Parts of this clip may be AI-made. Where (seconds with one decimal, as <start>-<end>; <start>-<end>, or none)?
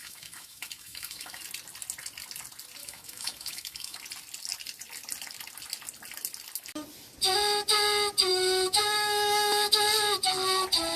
0.0-1.4; 2.8-4.0; 8.3-9.8